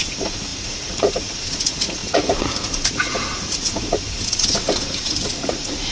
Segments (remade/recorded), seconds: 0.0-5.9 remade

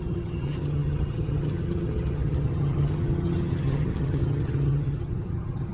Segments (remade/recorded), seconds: 0.0-5.7 remade

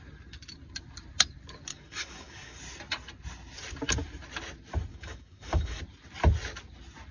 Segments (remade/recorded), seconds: 0.0-1.7 recorded; 1.7-2.6 remade; 2.6-4.9 recorded; 4.9-5.8 remade; 5.8-7.1 recorded

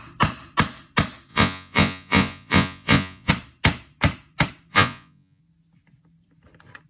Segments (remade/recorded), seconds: 0.0-1.3 recorded; 1.3-3.3 remade; 3.3-4.7 recorded; 4.7-5.4 remade; 5.4-6.9 recorded

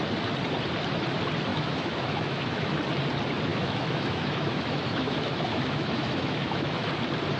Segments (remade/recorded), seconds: 0.0-1.5 recorded; 1.5-2.8 remade; 2.8-3.5 recorded; 3.5-6.9 remade; 6.9-7.4 recorded